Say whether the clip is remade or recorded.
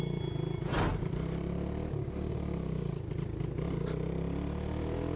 recorded